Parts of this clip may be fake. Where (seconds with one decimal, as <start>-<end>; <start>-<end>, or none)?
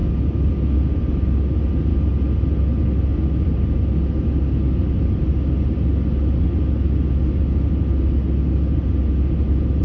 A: none